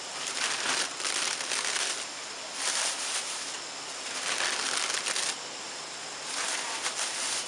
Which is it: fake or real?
real